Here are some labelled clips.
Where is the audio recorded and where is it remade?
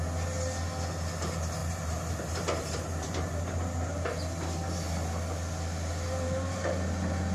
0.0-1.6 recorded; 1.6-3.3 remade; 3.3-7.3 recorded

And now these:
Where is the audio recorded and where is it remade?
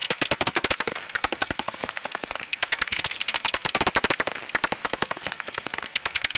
0.0-3.8 remade; 3.8-4.8 recorded; 4.8-6.4 remade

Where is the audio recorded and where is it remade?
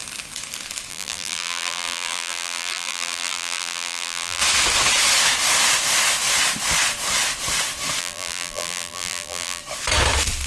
0.0-0.9 recorded; 0.9-4.4 remade; 4.4-8.0 recorded; 8.0-9.6 remade; 9.6-10.5 recorded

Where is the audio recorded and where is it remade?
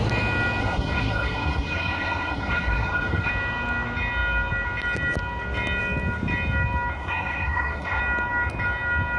0.0-0.6 recorded; 0.6-3.3 remade; 3.3-7.0 recorded; 7.0-8.0 remade; 8.0-9.2 recorded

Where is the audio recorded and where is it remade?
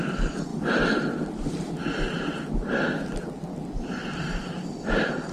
0.0-5.3 recorded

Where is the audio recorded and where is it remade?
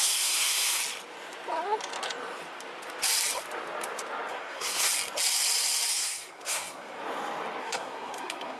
0.0-0.8 remade; 0.8-4.3 recorded; 4.3-4.9 remade; 4.9-5.9 recorded; 5.9-7.0 remade; 7.0-7.6 recorded; 7.6-8.6 remade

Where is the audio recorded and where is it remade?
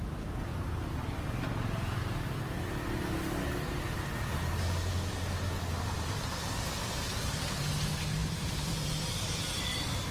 0.0-8.2 recorded; 8.2-9.1 remade; 9.1-10.1 recorded